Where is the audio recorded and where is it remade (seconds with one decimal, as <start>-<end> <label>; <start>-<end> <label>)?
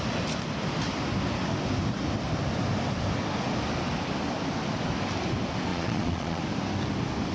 0.0-5.7 recorded; 5.7-6.4 remade; 6.4-7.3 recorded